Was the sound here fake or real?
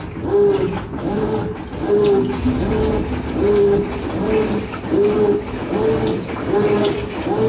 real